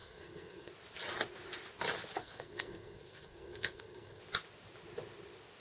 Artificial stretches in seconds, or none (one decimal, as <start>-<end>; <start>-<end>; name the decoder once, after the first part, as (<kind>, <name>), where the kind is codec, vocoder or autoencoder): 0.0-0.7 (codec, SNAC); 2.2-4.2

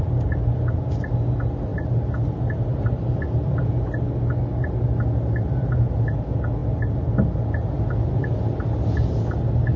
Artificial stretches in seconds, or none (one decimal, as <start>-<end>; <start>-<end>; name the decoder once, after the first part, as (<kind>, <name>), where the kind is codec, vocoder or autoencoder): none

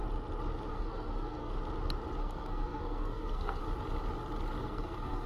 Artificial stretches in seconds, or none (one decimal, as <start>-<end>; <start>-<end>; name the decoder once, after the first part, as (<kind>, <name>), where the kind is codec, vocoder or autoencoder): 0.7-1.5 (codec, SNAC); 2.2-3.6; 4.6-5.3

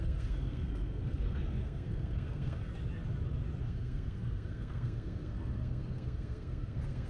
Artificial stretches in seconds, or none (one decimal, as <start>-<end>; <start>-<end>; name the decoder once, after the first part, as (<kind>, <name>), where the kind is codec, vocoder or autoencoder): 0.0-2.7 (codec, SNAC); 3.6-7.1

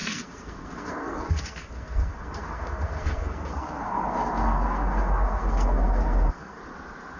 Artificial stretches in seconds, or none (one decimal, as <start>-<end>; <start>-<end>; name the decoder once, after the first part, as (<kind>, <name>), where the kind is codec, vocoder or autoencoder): 0.0-6.6 (codec, SNAC)